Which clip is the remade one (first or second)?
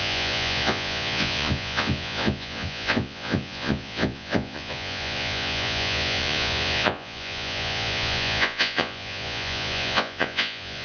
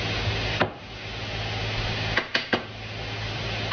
first